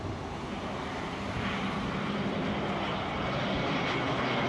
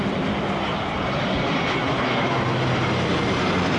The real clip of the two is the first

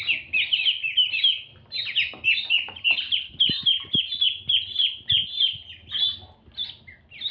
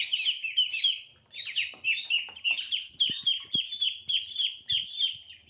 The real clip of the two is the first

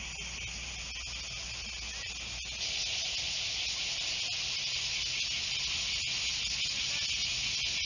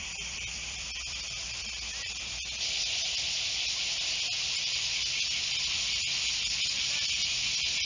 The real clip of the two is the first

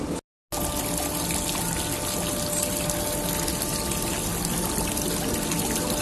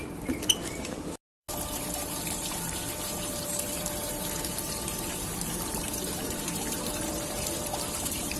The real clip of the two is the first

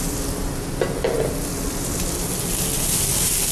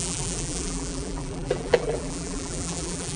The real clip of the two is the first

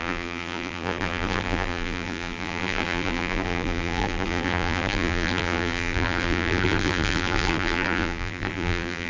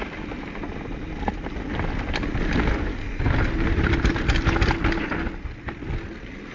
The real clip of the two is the second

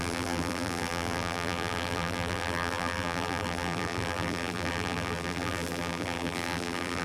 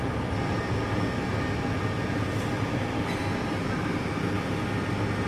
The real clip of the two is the second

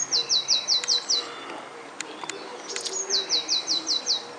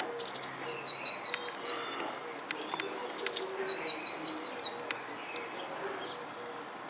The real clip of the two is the second